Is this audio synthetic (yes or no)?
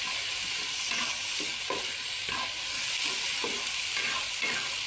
no